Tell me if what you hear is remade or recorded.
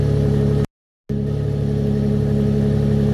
recorded